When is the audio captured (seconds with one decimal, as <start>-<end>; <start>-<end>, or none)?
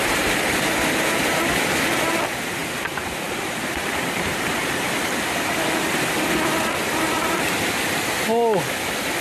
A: 0.0-2.6; 5.5-9.2